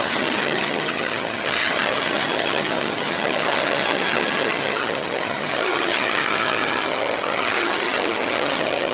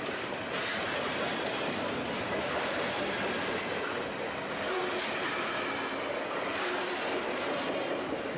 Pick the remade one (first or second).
first